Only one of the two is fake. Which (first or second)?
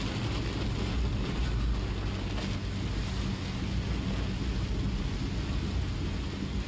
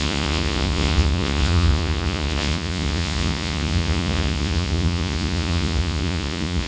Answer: second